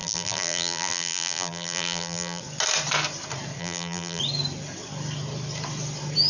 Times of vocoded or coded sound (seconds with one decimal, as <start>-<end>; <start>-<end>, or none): 0.0-2.4; 3.6-4.2